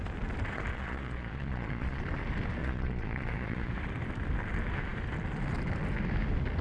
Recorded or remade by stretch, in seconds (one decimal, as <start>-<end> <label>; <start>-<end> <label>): 0.0-0.7 recorded; 0.7-2.0 remade; 2.0-2.6 recorded; 2.6-3.7 remade; 3.7-6.6 recorded